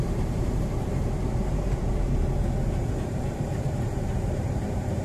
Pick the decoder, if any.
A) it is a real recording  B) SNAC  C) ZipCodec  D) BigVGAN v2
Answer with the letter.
D